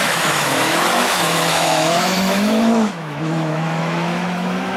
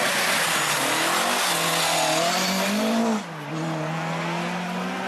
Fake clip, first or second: first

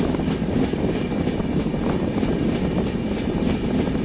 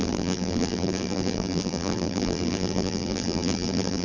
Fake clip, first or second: second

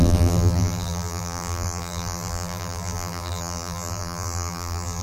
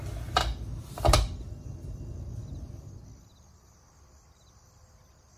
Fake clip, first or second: first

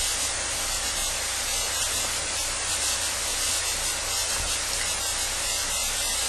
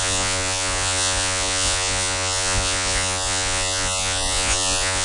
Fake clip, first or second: second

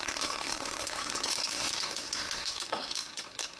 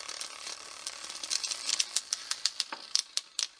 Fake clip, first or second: first